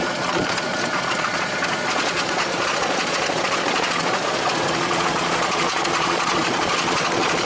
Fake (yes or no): yes